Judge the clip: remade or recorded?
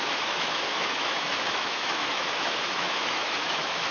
remade